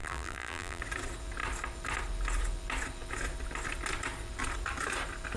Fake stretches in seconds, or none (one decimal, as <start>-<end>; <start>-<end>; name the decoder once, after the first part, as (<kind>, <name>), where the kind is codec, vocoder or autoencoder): 0.0-0.8 (vocoder, BigVGAN v2)